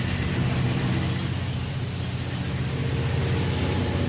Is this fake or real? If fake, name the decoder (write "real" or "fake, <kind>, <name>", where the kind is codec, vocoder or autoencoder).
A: real